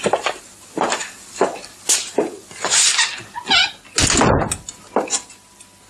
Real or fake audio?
real